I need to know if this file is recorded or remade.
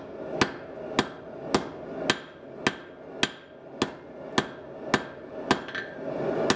recorded